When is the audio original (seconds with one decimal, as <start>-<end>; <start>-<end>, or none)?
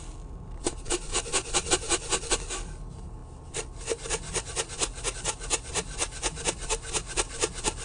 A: 0.0-7.8